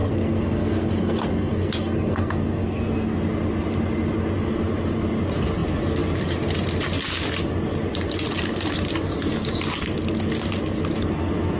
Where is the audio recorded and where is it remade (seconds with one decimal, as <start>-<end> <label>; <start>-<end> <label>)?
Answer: 0.0-2.8 remade; 2.8-11.6 recorded